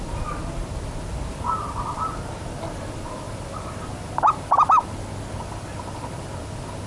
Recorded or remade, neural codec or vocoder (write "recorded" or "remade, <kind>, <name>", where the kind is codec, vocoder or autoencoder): recorded